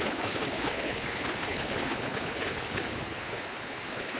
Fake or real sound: fake